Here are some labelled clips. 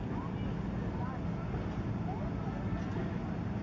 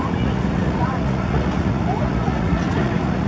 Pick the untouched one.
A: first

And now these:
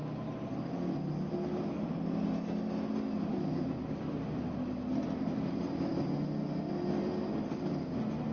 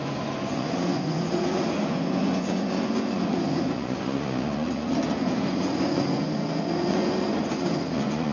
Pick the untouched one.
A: first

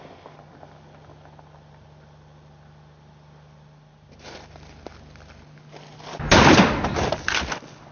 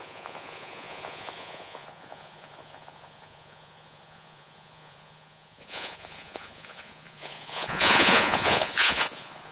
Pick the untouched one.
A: first